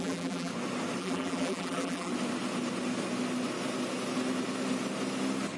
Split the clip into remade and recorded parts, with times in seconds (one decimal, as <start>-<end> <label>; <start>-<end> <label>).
0.0-0.5 remade; 0.5-1.0 recorded; 1.0-2.1 remade; 2.1-5.6 recorded